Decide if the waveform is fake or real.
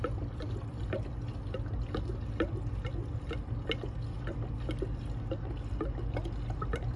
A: real